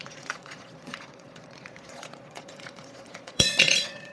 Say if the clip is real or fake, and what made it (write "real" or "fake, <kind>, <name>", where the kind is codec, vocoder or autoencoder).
fake, vocoder, Vocos